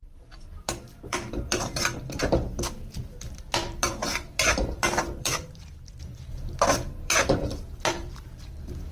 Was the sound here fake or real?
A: fake